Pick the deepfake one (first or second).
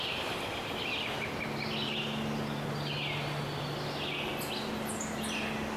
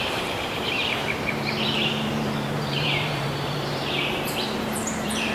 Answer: second